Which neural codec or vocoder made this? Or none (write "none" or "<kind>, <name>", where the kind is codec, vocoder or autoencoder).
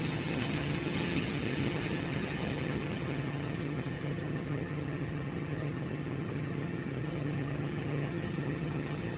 vocoder, HiFi-GAN